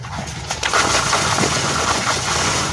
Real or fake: fake